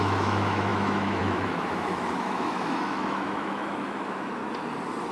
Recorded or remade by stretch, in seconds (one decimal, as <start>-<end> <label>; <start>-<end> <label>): 0.0-4.4 remade; 4.4-5.1 recorded